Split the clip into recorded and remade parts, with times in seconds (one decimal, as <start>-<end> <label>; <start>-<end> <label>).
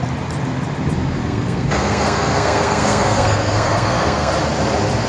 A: 0.0-1.2 recorded; 1.2-4.3 remade; 4.3-5.1 recorded